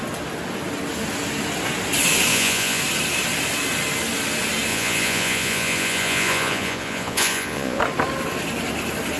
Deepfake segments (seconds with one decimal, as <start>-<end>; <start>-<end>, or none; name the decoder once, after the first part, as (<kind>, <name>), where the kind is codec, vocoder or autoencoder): 2.3-2.8 (vocoder, Vocos); 4.7-7.8